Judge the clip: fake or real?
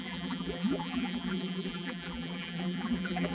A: fake